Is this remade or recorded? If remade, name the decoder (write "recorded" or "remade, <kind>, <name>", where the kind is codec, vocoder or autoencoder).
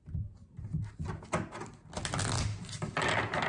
recorded